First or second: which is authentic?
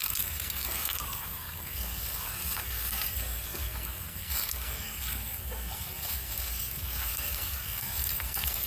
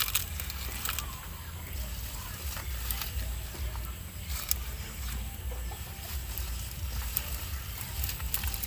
second